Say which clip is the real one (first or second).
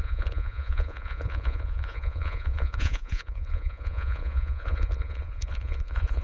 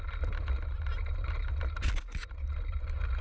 second